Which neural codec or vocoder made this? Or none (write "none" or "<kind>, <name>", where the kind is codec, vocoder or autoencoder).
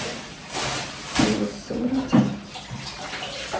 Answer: none